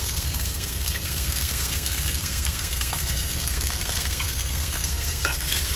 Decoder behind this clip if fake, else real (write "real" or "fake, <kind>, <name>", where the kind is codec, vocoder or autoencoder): fake, codec, SNAC